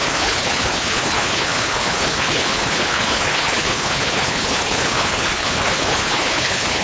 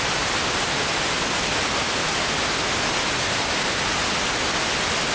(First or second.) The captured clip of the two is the second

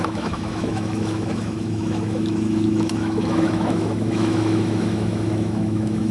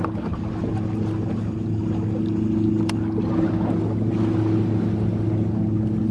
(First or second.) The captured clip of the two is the second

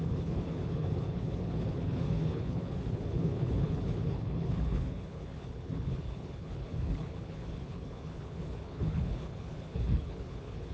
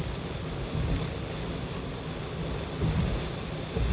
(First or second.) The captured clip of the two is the second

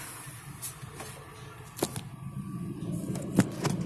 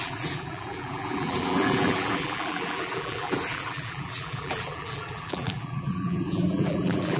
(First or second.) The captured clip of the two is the first